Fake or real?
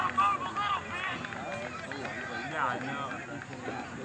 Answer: real